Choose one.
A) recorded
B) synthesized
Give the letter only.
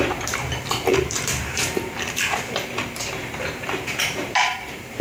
B